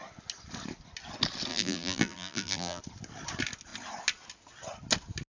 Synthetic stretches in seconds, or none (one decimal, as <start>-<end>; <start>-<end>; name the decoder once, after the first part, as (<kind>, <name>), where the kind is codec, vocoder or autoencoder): 1.5-2.8 (vocoder, BigVGAN v2)